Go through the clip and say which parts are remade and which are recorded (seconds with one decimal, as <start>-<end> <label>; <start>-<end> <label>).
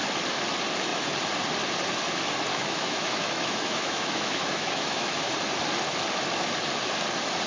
0.0-2.5 recorded; 2.5-5.3 remade; 5.3-7.5 recorded